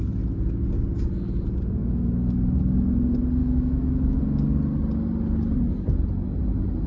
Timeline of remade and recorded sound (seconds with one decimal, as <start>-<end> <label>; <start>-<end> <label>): 0.0-1.8 recorded; 1.8-2.6 remade; 2.6-3.4 recorded; 3.4-4.2 remade; 4.2-6.9 recorded